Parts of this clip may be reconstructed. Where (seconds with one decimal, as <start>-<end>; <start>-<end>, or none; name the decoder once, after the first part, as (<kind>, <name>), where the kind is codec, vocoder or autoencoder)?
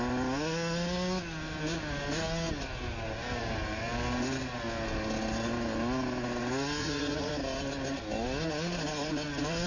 6.8-7.3 (vocoder, Vocos)